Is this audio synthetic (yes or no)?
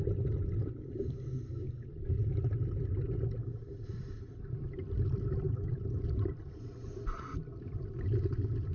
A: no